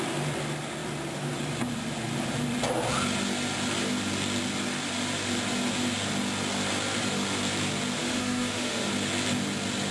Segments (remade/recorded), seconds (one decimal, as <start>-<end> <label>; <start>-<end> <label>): 0.0-8.0 recorded; 8.0-8.9 remade; 8.9-9.9 recorded